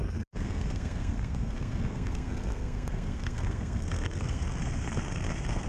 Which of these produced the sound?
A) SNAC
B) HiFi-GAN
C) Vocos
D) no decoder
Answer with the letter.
A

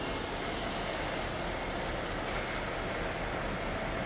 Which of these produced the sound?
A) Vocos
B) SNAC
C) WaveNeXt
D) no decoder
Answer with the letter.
D